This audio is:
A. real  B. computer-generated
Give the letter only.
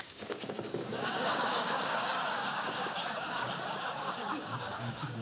B